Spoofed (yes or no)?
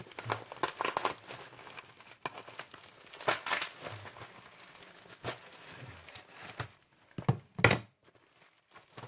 no